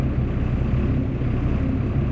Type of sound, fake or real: real